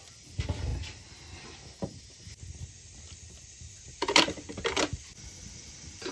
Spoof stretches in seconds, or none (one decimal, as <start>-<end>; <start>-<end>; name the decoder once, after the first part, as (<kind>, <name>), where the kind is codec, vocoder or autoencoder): none

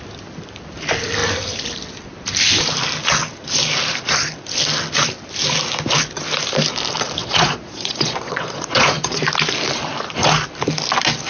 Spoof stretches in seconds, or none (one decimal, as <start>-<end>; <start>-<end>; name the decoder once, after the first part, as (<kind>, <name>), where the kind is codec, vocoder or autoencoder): 7.2-9.2 (vocoder, Vocos)

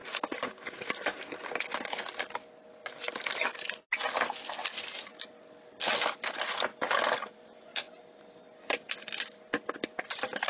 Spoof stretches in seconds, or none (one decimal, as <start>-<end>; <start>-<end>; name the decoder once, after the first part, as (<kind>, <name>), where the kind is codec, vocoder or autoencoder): 0.0-0.5 (vocoder, Vocos)

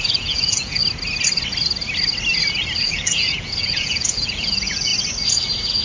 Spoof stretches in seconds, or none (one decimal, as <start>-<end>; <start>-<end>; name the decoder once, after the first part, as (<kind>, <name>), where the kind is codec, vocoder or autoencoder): 0.0-0.8 (vocoder, Vocos); 2.8-4.9

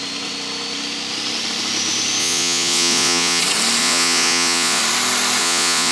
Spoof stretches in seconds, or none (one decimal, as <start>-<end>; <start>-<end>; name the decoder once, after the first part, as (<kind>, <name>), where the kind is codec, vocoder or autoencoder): 2.2-3.4 (vocoder, Vocos); 3.8-4.8; 5.4-5.9

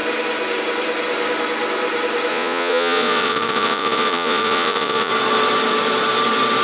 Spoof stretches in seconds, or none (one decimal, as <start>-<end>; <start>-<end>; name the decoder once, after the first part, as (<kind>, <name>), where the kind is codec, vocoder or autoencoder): 2.3-5.1 (vocoder, Vocos)